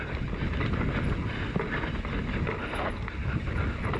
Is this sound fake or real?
real